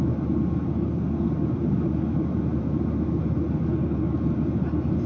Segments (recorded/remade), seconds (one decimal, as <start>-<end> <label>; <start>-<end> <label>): 0.0-0.7 recorded; 0.7-1.3 remade; 1.3-5.1 recorded